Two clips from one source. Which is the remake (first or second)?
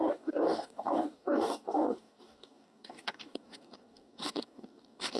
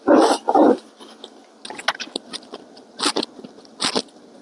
first